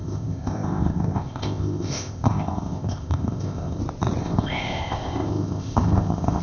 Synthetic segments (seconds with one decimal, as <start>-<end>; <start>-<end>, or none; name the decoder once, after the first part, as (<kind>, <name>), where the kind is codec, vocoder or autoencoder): 0.0-3.8 (codec, ZipCodec); 4.2-6.4